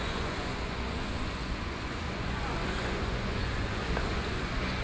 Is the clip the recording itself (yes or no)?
no